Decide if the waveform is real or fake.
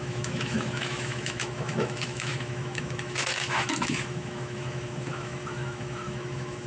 fake